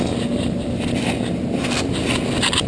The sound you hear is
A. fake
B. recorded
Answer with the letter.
B